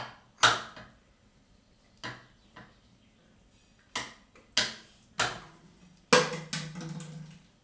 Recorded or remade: recorded